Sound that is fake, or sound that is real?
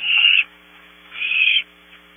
fake